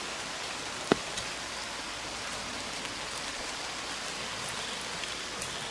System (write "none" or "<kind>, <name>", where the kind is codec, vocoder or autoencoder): none